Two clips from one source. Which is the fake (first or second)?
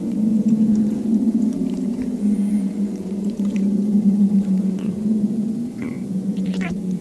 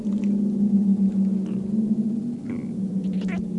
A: first